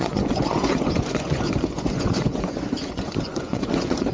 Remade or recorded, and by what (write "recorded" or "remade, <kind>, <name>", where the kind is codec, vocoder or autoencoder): remade, vocoder, Vocos